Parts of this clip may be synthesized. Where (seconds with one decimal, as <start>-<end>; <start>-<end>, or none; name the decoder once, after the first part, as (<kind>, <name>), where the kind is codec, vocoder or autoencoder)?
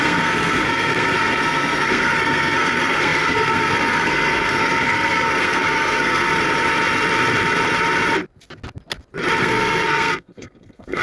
0.0-6.3 (codec, SNAC); 9.4-11.0